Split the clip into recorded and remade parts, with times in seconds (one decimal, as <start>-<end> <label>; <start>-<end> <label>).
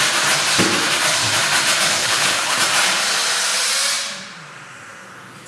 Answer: 0.0-2.0 recorded; 2.0-2.6 remade; 2.6-5.5 recorded